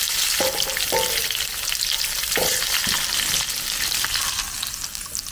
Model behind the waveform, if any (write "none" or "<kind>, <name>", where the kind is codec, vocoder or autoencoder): none